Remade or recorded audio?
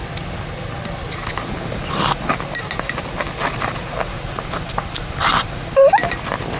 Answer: recorded